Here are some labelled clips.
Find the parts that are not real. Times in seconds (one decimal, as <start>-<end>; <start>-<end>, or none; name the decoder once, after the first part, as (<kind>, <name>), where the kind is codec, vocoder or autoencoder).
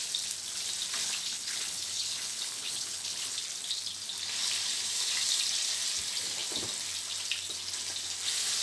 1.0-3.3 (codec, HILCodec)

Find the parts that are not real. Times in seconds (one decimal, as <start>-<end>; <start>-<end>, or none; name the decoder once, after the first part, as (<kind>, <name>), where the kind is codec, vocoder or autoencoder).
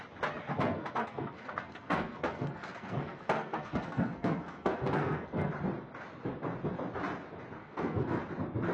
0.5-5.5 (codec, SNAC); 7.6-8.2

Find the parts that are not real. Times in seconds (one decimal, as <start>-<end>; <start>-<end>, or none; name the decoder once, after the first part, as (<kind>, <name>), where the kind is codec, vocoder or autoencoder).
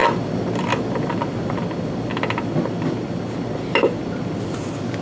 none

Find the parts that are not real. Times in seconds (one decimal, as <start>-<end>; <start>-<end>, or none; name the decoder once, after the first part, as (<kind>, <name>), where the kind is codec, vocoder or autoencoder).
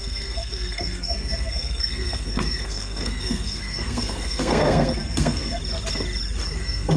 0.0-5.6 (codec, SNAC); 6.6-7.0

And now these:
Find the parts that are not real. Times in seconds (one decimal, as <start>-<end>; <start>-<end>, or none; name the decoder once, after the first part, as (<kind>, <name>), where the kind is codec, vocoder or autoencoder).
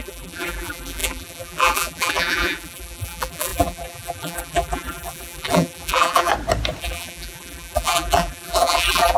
0.0-6.3 (vocoder, BigVGAN v2); 6.8-9.2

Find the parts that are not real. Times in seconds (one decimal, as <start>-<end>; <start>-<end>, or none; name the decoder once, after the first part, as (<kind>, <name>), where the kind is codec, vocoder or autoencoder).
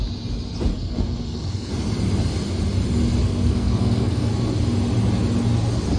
0.7-1.7 (codec, SNAC); 3.2-4.3